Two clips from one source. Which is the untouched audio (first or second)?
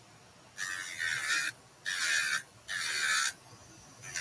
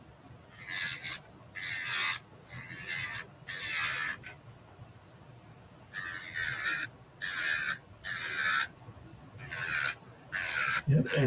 first